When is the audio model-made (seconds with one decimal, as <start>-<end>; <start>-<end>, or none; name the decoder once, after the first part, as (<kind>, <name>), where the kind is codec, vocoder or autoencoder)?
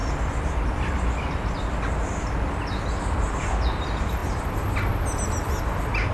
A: 3.3-6.1 (vocoder, BigVGAN v2)